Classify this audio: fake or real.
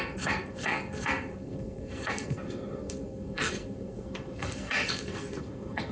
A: fake